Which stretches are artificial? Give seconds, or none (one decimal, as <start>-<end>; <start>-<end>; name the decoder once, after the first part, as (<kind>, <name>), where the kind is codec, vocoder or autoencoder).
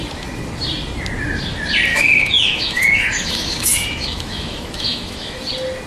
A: 1.9-5.4 (autoencoder, DAC-VAE)